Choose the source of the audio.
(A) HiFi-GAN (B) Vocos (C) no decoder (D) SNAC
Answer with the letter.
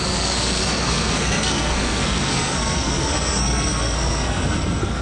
D